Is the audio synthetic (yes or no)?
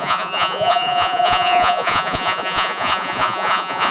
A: yes